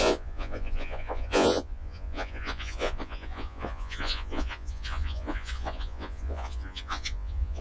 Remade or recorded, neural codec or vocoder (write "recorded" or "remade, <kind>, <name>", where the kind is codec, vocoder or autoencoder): remade, vocoder, Vocos